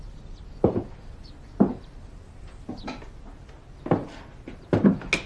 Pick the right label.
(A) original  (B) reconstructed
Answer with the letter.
A